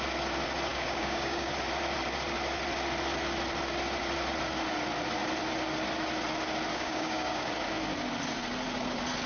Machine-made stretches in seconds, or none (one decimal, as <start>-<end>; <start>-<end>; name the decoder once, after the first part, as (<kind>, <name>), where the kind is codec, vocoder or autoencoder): 0.7-1.5 (codec, DAC); 6.7-7.5